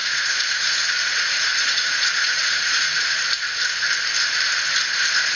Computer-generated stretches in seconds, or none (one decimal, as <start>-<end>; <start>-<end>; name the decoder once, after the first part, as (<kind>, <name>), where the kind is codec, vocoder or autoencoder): 0.0-3.2 (vocoder, Vocos)